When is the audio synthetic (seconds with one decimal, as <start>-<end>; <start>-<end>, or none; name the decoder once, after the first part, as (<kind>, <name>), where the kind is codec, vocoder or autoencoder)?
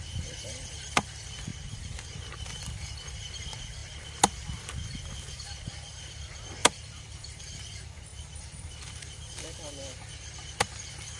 1.5-2.3 (vocoder, BigVGAN v2); 6.6-7.4; 8.1-9.3